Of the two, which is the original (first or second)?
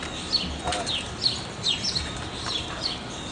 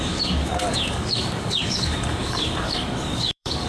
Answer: first